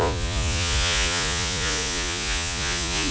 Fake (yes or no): yes